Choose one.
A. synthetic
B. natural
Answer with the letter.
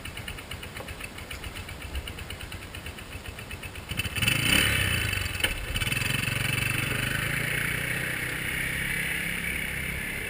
A